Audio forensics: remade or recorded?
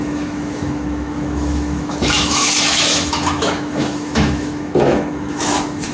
remade